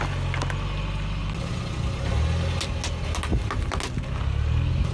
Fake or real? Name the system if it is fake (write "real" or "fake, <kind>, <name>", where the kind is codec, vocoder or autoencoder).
real